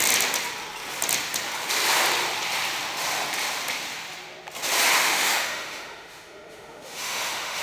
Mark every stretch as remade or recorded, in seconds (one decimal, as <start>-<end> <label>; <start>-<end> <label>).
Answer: 0.0-5.0 recorded; 5.0-7.6 remade